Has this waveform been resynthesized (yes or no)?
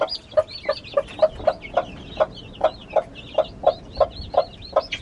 no